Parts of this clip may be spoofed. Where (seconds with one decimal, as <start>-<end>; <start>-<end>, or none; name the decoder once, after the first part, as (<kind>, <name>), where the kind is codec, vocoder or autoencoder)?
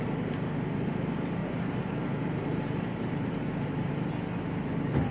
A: 1.4-4.1 (vocoder, BigVGAN v2)